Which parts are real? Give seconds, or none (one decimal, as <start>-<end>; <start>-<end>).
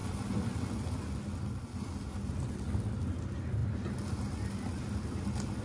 0.0-5.6